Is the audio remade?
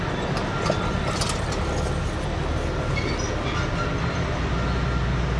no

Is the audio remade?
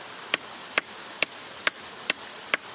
yes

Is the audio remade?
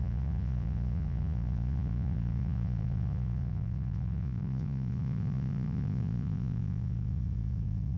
yes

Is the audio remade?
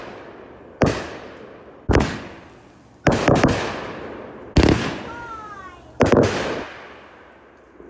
no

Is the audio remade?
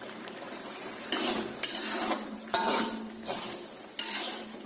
yes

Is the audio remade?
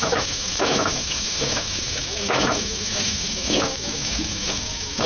yes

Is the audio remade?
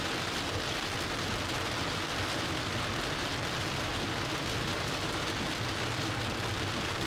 no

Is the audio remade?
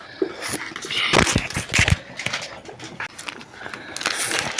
no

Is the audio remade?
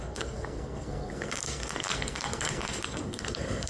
yes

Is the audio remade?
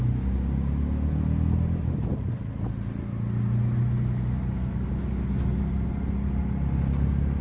no